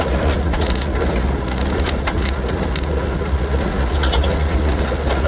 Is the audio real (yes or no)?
no